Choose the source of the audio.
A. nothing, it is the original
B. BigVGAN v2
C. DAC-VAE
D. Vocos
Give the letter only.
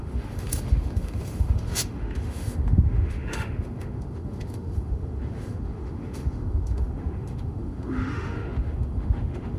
C